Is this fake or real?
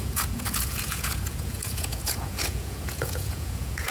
fake